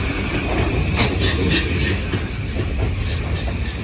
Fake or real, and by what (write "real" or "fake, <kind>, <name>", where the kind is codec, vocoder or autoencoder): real